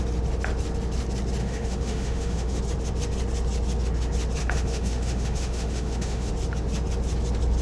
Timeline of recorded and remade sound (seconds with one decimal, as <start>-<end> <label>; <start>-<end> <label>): 0.0-1.4 recorded; 1.4-2.6 remade; 2.6-4.4 recorded; 4.4-6.3 remade; 6.3-7.6 recorded